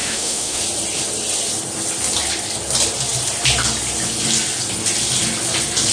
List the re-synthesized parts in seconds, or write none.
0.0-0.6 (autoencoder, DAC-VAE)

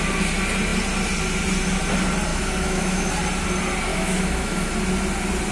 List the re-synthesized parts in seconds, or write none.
2.3-3.1 (autoencoder, DAC-VAE); 3.9-4.7